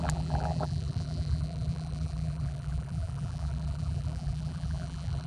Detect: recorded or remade remade